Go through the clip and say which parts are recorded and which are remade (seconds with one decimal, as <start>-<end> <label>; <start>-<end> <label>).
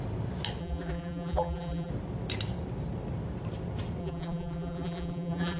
0.0-0.6 recorded; 0.6-1.9 remade; 1.9-4.0 recorded; 4.0-5.6 remade